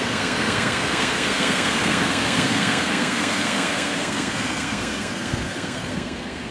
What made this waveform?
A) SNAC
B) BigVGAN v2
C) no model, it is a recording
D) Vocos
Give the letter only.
A